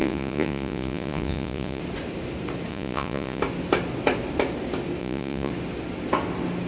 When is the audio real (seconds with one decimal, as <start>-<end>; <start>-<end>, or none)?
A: 1.8-2.7; 3.4-5.0; 5.5-6.7